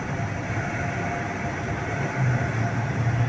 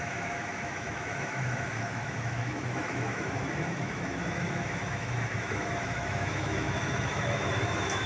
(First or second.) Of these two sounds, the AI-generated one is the second